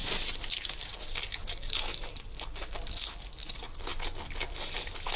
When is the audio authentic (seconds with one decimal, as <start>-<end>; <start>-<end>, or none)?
0.0-5.2